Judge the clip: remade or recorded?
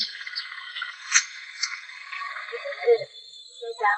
remade